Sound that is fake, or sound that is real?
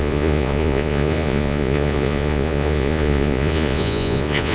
fake